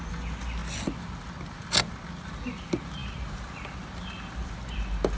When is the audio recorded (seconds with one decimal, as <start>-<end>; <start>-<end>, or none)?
0.0-5.2